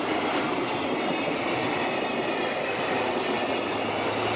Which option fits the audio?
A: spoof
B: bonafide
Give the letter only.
B